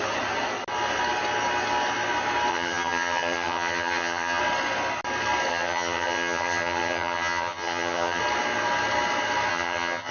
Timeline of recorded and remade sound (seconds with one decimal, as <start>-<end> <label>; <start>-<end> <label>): 0.0-2.5 recorded; 2.5-4.4 remade; 4.4-5.5 recorded; 5.5-8.2 remade; 8.2-9.5 recorded; 9.5-10.1 remade